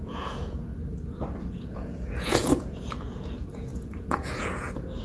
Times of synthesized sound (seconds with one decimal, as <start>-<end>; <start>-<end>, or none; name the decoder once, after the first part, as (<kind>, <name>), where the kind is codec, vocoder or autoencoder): 0.0-0.7 (vocoder, Vocos); 1.5-5.0